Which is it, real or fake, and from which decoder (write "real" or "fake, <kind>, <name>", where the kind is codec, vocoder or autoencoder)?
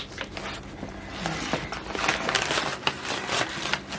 real